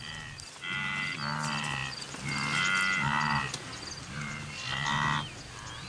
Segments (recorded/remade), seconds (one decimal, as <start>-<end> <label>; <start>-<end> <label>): 0.0-5.9 recorded